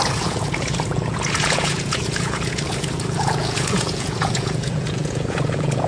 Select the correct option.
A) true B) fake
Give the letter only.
B